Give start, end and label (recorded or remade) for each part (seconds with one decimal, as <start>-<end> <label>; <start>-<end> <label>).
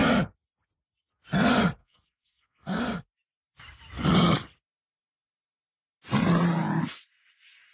0.0-1.8 recorded; 1.8-2.8 remade; 2.8-7.7 recorded